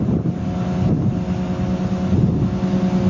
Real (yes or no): yes